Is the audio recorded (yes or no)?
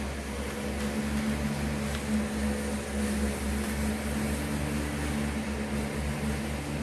yes